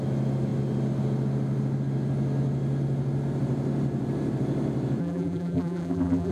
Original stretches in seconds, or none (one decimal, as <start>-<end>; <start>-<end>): 0.0-5.0